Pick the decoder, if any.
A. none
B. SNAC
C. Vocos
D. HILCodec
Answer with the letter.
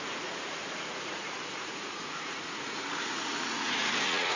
C